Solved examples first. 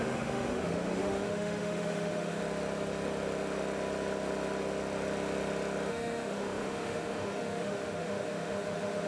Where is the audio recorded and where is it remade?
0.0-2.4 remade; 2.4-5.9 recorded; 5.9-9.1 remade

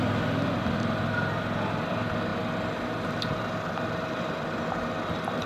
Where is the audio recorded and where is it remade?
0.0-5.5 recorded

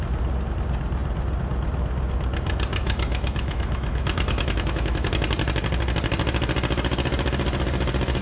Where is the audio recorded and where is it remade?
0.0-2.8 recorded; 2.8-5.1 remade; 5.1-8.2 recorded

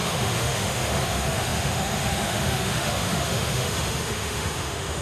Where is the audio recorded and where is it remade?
0.0-5.0 remade

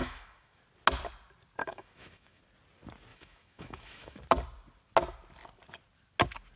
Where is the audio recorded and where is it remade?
0.0-0.6 remade; 0.6-1.6 recorded; 1.6-2.4 remade; 2.4-3.1 recorded; 3.1-4.2 remade; 4.2-6.6 recorded